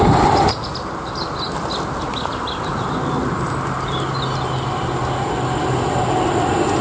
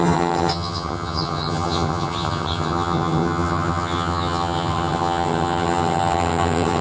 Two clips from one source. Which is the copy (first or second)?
second